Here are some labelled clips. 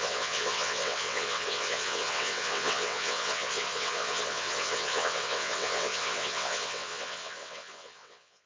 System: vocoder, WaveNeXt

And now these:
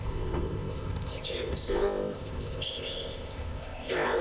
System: codec, ZipCodec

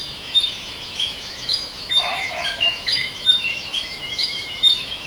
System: autoencoder, DAC-VAE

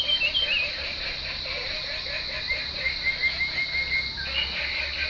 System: none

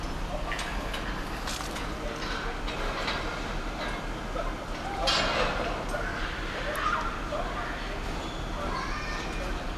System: none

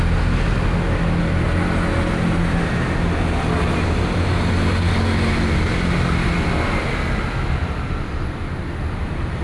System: none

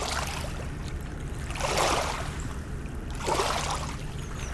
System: none